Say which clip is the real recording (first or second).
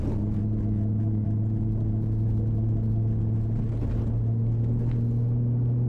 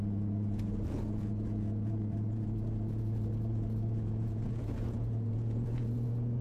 first